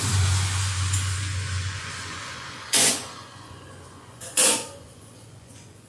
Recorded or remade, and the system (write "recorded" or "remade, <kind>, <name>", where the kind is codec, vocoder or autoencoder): remade, vocoder, Vocos